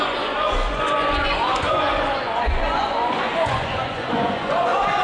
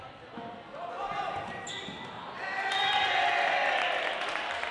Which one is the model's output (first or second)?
first